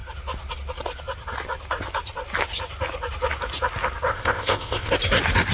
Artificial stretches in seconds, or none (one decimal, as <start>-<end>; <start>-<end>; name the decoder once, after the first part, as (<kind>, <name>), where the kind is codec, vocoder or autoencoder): 4.1-4.9 (codec, ZipCodec)